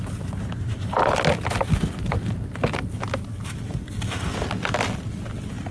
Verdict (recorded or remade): recorded